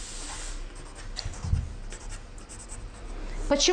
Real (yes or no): yes